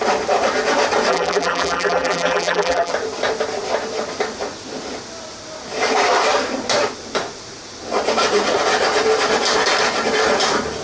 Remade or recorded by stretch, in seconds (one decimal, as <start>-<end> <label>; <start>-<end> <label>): 0.0-1.1 recorded; 1.1-2.9 remade; 2.9-10.8 recorded